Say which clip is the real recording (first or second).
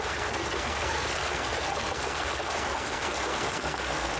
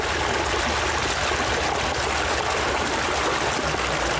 second